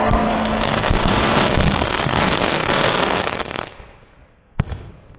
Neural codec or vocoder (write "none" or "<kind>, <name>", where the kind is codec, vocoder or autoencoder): codec, SNAC